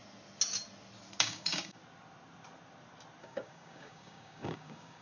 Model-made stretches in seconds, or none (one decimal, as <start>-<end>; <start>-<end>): 1.2-1.8; 3.2-5.0